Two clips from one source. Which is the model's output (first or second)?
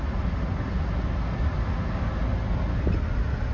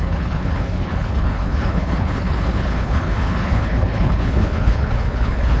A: second